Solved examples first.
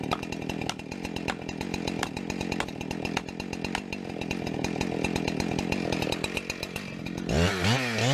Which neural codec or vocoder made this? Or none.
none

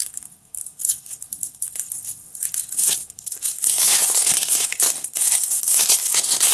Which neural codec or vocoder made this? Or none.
codec, SNAC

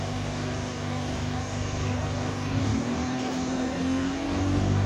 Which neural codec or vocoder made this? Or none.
codec, DAC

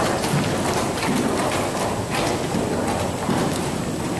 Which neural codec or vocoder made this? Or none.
none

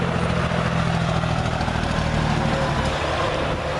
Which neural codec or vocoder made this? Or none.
none